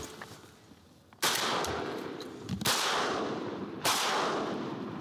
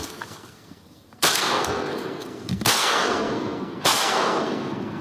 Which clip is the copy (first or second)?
second